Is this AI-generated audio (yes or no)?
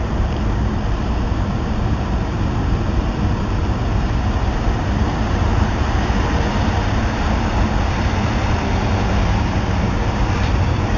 yes